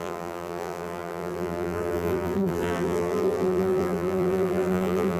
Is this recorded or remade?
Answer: remade